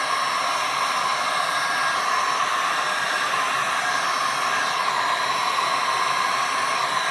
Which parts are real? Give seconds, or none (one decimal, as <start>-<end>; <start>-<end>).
0.0-7.1